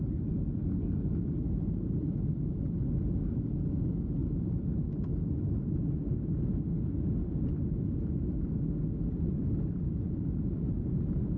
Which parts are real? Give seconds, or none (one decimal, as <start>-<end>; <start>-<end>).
0.0-11.4